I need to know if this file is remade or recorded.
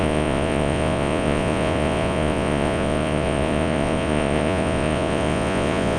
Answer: remade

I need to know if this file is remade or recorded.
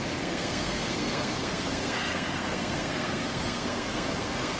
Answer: remade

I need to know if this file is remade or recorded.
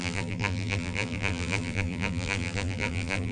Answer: remade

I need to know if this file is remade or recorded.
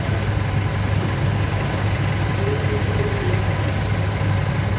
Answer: recorded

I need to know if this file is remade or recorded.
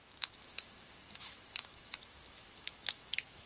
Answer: remade